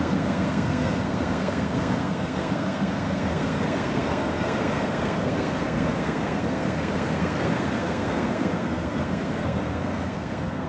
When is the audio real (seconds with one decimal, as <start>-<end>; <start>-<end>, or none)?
none

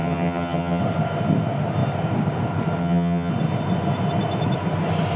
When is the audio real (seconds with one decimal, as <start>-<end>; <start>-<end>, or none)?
0.8-2.8; 3.3-5.2

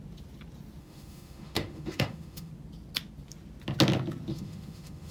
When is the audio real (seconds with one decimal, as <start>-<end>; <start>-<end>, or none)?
0.0-0.8; 2.5-4.3

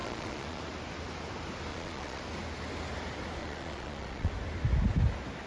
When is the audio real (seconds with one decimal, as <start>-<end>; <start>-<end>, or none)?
0.6-1.7; 2.2-3.4; 4.3-5.5